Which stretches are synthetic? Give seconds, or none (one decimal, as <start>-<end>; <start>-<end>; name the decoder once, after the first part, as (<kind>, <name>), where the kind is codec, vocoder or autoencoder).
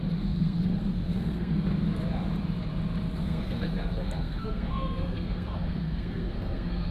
0.0-1.7 (codec, SNAC); 3.2-6.9